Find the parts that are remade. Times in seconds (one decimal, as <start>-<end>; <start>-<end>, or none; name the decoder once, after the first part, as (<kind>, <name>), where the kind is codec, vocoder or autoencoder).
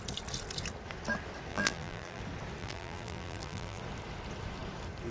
1.5-2.2 (vocoder, BigVGAN v2); 2.6-3.8